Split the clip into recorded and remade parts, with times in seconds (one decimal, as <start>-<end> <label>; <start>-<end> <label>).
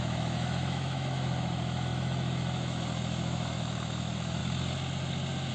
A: 0.0-4.4 remade; 4.4-5.5 recorded